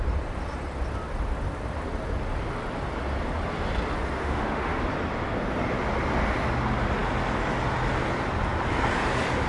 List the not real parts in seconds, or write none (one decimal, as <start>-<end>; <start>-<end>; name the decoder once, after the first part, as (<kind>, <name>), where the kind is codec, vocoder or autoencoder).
4.2-4.8 (autoencoder, DAC-VAE)